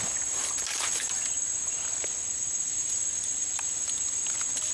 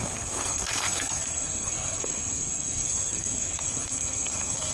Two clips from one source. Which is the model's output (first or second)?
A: second